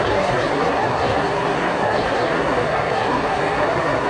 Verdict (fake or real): fake